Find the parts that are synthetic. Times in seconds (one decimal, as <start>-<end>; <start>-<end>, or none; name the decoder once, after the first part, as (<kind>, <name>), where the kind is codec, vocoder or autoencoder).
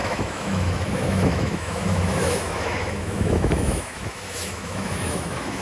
0.0-5.6 (autoencoder, DAC-VAE)